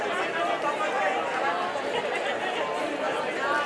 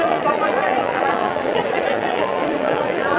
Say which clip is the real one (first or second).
first